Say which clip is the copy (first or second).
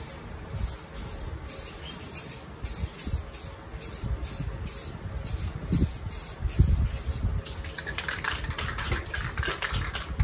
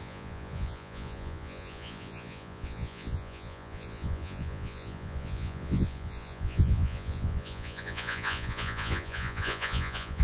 second